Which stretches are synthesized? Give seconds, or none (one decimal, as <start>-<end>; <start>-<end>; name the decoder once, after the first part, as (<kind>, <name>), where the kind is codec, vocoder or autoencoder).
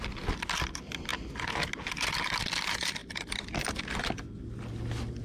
none